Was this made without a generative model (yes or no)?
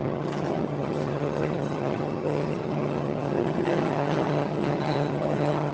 no